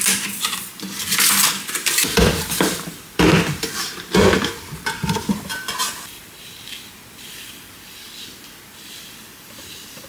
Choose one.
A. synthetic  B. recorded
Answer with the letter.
A